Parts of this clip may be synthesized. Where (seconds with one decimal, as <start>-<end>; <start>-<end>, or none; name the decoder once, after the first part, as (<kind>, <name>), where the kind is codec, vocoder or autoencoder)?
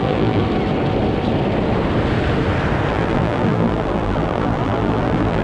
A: 0.0-0.4 (vocoder, BigVGAN v2); 2.9-5.4